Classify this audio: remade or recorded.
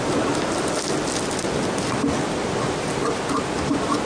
recorded